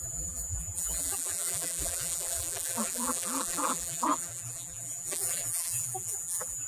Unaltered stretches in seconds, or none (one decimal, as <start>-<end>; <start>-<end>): none